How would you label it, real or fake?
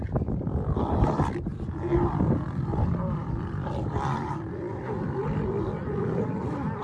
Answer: fake